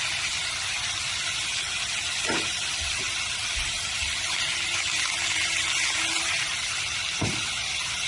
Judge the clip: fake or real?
real